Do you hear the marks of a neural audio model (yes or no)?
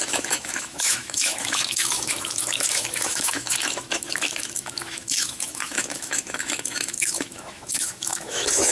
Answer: yes